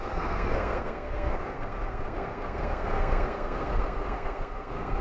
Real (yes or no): no